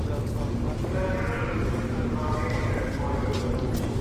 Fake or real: real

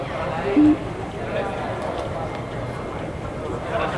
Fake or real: fake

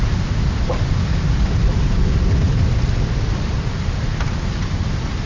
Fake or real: real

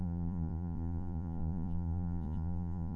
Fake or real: fake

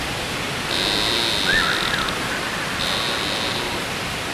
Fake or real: real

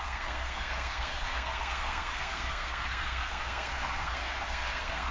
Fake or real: fake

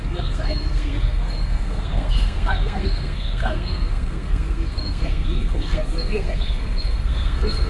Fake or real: fake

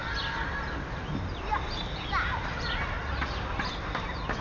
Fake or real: real